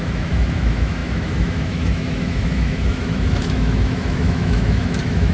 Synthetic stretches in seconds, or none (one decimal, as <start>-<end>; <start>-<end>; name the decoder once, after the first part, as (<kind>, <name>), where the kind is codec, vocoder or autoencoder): 0.0-5.3 (autoencoder, DAC-VAE)